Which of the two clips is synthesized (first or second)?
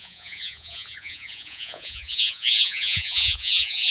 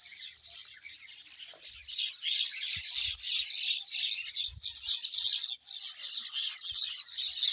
first